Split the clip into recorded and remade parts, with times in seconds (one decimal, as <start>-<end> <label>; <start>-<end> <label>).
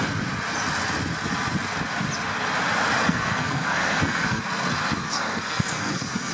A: 0.0-3.1 recorded; 3.1-4.4 remade; 4.4-5.0 recorded; 5.0-6.3 remade